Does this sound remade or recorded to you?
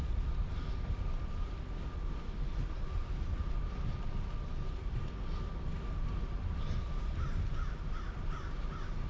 recorded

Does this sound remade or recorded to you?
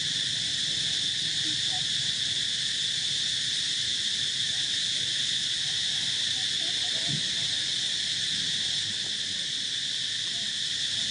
recorded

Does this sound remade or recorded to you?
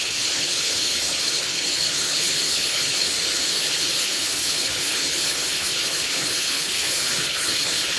remade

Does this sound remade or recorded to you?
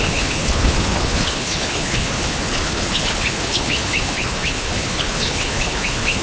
remade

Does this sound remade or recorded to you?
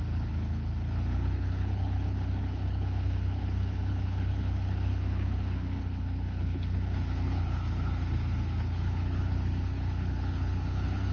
remade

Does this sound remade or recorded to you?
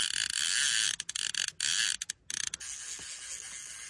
recorded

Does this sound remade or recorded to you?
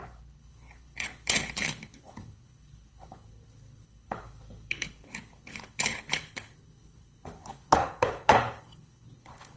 remade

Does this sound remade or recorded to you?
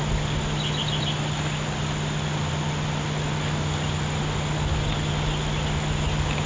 recorded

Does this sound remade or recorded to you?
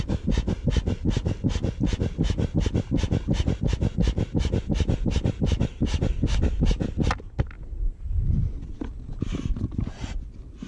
recorded